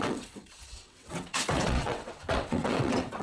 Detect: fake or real fake